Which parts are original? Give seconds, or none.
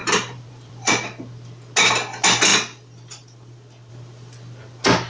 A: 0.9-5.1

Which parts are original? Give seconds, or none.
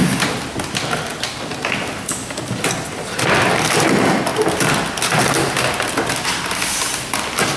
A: 0.0-7.6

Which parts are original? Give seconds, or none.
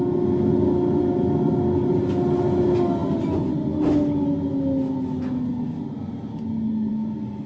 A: 0.0-6.9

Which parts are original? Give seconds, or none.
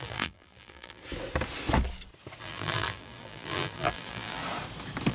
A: 1.0-2.4; 4.4-5.1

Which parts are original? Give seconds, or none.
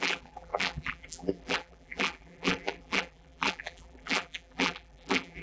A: none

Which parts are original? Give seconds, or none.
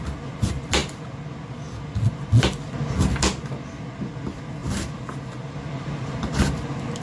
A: 0.0-4.6; 6.3-7.0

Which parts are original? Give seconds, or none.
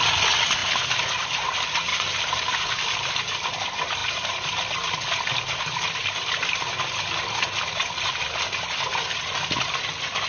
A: 0.0-1.9; 3.1-10.3